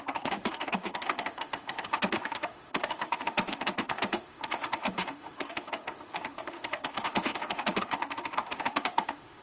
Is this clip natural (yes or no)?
no